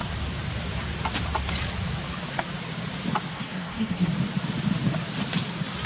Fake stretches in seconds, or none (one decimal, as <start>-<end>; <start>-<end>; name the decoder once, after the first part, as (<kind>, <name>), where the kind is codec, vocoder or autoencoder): 3.3-4.1 (codec, SNAC)